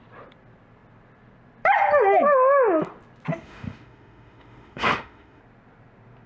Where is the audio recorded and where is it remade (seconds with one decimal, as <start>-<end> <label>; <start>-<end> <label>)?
0.0-3.3 recorded; 3.3-5.4 remade; 5.4-6.3 recorded